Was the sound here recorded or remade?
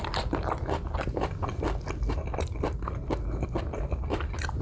recorded